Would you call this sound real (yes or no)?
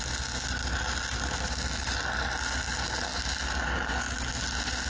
yes